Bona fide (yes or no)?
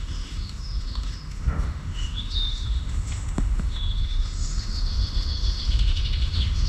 no